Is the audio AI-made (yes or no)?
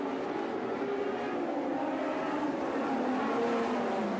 no